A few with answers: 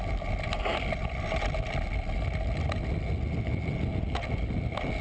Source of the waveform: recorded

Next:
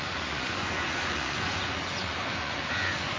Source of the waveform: remade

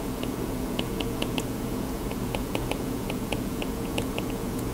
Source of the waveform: remade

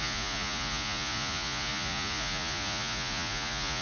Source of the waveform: remade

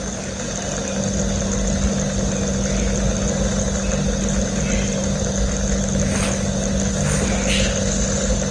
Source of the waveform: recorded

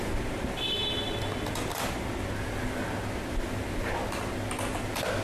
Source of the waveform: recorded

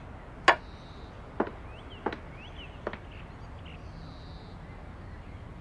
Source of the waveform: recorded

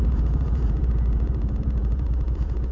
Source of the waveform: remade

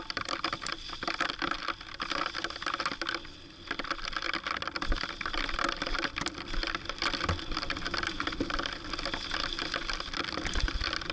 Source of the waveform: recorded